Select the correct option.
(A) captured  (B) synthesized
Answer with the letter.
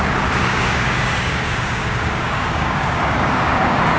B